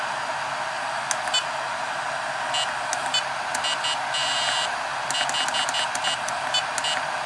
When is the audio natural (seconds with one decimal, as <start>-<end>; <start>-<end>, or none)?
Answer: 0.0-4.2; 4.8-7.3